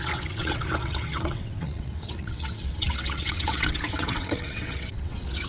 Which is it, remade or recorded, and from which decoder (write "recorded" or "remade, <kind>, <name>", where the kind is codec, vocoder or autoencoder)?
remade, vocoder, WaveNeXt